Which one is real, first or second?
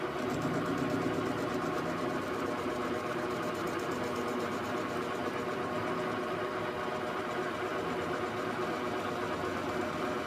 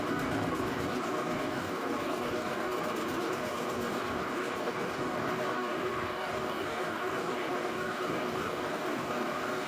first